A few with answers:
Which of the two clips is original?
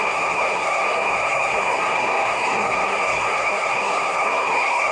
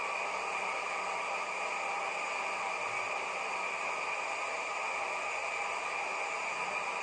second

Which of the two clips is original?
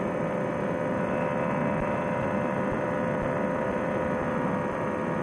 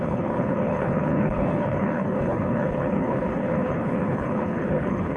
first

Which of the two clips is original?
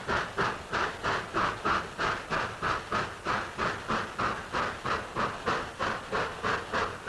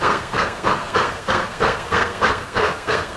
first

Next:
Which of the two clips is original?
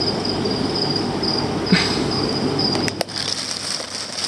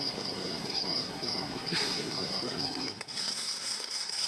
first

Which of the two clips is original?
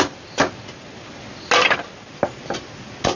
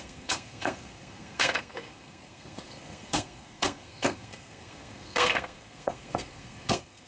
first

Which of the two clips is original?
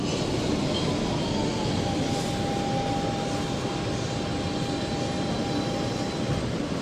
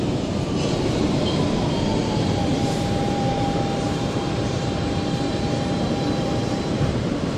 first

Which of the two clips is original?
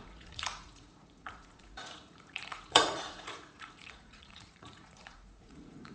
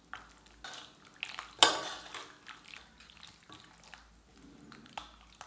second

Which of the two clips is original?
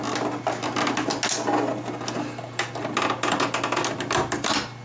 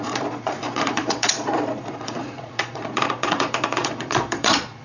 first